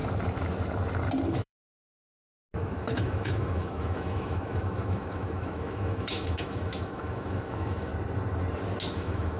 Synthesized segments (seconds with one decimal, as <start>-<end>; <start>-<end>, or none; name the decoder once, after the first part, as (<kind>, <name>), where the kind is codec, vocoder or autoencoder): 1.3-1.8 (autoencoder, DAC-VAE); 2.6-7.9; 8.9-9.4